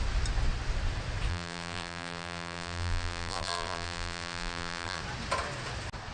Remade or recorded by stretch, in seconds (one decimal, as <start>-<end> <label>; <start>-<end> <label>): 0.0-1.3 recorded; 1.3-5.0 remade; 5.0-6.1 recorded